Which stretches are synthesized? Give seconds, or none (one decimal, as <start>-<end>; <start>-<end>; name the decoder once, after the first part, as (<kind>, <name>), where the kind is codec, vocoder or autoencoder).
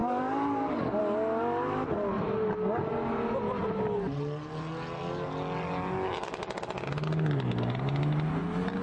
0.0-1.0 (codec, DAC)